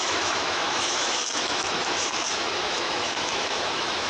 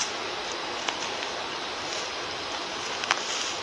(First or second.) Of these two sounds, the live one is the second